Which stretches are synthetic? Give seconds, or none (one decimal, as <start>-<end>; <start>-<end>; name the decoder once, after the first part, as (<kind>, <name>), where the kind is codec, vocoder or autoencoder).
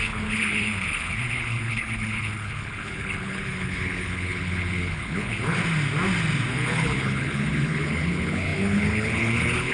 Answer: 0.0-5.6 (codec, HILCodec); 6.5-9.7